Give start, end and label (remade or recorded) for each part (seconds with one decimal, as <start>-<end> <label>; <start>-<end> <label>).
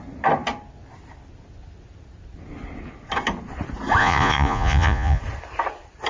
0.0-4.0 recorded; 4.0-5.2 remade; 5.2-6.1 recorded